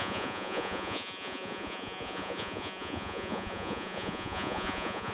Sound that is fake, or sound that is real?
fake